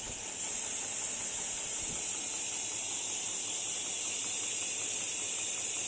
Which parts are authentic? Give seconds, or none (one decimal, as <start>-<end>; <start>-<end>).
0.0-1.3